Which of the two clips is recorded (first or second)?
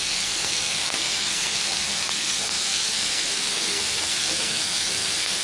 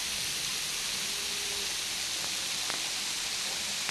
second